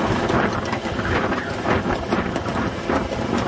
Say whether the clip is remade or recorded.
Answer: recorded